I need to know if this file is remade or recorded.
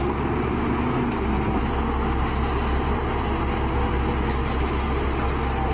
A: recorded